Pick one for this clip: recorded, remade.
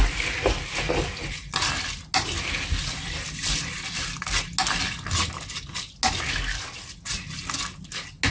recorded